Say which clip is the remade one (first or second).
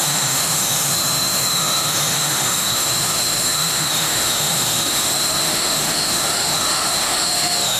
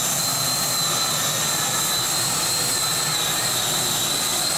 first